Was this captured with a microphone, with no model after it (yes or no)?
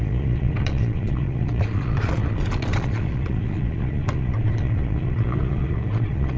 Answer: no